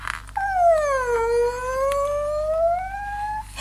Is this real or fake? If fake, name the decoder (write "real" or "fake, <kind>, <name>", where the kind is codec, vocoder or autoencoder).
real